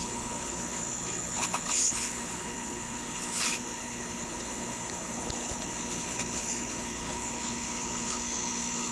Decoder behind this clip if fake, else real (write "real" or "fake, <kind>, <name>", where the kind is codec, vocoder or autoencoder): fake, codec, HILCodec